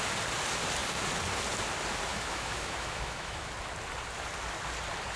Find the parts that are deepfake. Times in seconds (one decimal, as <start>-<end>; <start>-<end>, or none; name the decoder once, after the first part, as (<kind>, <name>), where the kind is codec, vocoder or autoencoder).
2.1-3.5 (autoencoder, DAC-VAE)